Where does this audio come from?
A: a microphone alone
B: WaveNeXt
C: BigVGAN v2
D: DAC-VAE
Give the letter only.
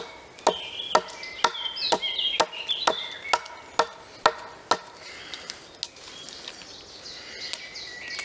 A